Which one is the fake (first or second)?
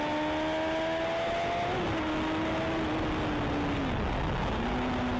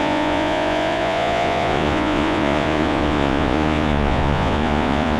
second